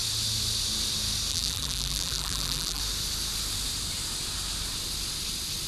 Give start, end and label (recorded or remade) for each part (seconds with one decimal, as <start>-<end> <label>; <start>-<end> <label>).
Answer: 0.0-1.3 recorded; 1.3-2.8 remade; 2.8-5.7 recorded